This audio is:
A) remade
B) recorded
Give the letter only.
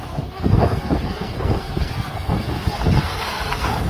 A